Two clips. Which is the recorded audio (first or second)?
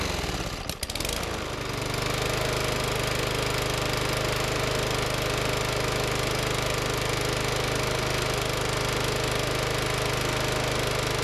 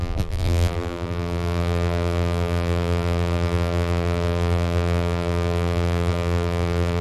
first